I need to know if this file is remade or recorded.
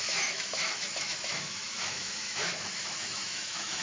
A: remade